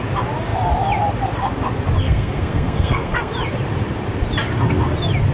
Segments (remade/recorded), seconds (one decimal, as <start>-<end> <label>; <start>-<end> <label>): 0.0-2.0 recorded; 2.0-3.3 remade; 3.3-5.3 recorded